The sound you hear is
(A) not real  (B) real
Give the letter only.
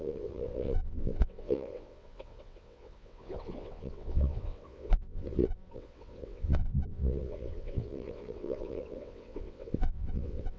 A